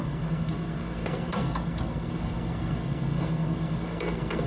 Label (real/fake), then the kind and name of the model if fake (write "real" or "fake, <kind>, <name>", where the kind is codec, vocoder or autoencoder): fake, codec, SNAC